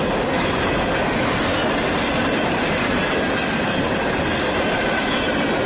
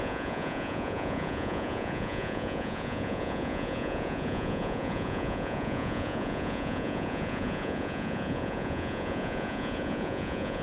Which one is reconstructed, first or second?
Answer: second